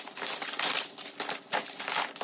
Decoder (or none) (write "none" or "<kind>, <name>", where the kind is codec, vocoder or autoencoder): none